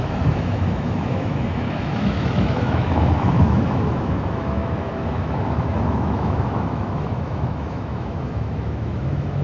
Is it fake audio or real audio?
fake